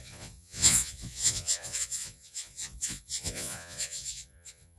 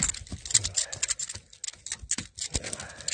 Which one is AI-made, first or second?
first